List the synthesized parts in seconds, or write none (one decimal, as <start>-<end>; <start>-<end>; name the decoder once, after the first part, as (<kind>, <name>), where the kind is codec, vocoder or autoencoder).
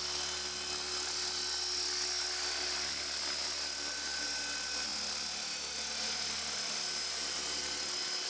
none